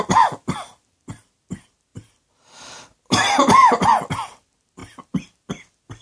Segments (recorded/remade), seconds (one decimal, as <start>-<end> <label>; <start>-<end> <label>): 0.0-6.0 recorded